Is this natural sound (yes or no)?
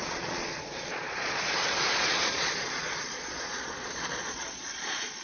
no